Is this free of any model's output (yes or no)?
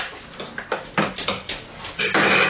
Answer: yes